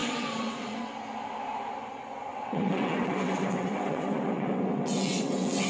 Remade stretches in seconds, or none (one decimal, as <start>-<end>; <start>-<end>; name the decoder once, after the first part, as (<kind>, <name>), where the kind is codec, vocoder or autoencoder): 0.0-0.9 (vocoder, WaveNeXt); 2.3-5.7